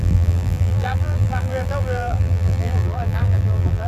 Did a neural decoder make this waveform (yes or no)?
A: yes